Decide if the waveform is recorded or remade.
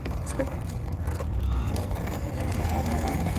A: remade